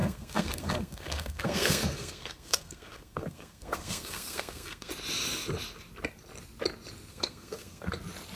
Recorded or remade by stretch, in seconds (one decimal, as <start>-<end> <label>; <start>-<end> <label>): 0.0-4.9 remade; 4.9-7.1 recorded; 7.1-7.9 remade; 7.9-8.4 recorded